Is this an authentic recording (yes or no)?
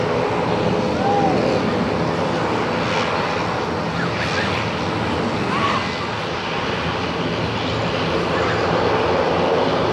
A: yes